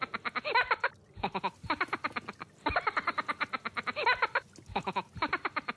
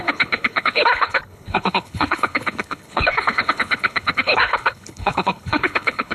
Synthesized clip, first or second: second